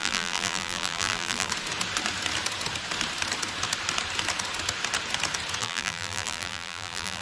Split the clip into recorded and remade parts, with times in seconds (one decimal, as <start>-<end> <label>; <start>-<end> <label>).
0.0-1.5 remade; 1.5-5.6 recorded; 5.6-7.2 remade